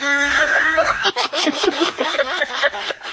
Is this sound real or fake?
fake